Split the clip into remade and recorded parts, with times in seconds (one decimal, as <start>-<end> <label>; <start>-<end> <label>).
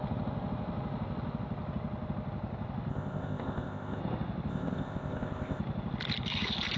0.0-2.9 recorded; 2.9-4.0 remade; 4.0-4.5 recorded; 4.5-5.6 remade; 5.6-6.8 recorded